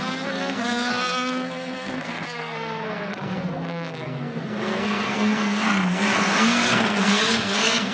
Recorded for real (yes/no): no